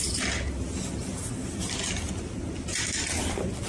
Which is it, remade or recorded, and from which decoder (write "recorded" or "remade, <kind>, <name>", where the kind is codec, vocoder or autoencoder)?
recorded